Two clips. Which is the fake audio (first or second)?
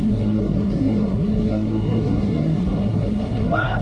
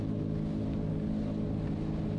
first